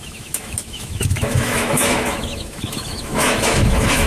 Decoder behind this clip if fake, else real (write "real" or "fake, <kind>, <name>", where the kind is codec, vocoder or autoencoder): fake, autoencoder, DAC-VAE